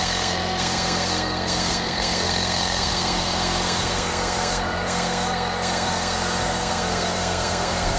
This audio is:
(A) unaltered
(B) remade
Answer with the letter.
B